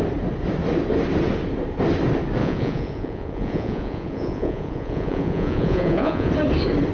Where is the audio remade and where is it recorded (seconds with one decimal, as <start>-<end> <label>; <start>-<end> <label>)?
0.0-2.4 recorded; 2.4-6.3 remade; 6.3-6.9 recorded